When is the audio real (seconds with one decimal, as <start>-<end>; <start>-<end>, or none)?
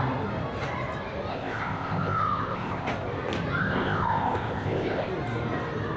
0.0-1.3; 2.9-3.6; 5.1-6.0